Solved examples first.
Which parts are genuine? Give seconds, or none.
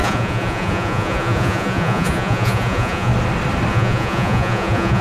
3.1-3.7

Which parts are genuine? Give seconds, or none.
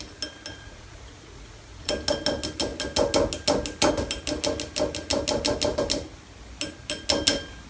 0.0-0.5; 1.9-7.7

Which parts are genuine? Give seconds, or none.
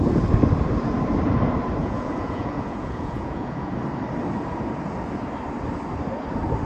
0.0-1.8; 3.7-6.7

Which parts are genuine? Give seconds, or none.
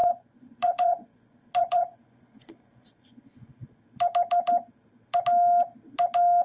3.8-6.4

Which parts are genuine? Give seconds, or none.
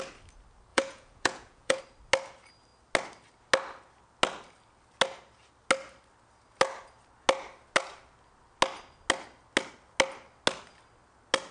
0.0-0.7; 1.8-11.5